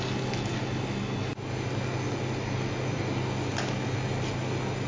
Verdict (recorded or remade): recorded